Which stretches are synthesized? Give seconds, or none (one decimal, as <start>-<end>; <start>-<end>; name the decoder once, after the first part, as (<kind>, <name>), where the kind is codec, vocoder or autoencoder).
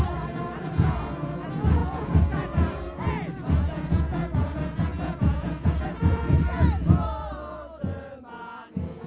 0.0-9.1 (vocoder, Vocos)